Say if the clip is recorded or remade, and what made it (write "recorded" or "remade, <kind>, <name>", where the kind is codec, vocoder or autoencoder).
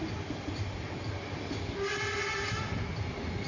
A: recorded